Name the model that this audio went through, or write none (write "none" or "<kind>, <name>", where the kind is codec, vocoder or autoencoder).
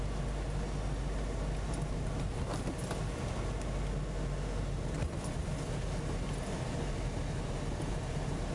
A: none